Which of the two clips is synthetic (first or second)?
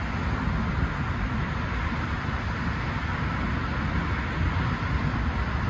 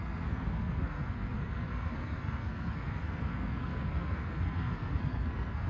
second